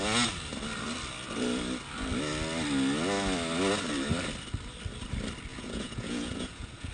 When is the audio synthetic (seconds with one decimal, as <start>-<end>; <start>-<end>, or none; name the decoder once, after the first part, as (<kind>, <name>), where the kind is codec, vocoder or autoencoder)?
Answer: 5.5-6.9 (vocoder, Vocos)